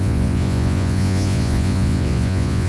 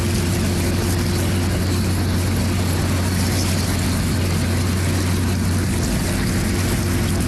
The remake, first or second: first